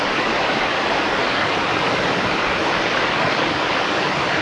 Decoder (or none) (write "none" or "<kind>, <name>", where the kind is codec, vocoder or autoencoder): codec, DAC